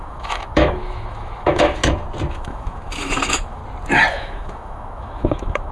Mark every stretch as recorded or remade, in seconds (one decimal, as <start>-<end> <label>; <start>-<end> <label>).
0.0-1.8 remade; 1.8-2.3 recorded; 2.3-3.6 remade; 3.6-4.1 recorded; 4.1-5.7 remade